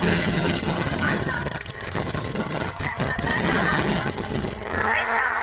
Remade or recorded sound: remade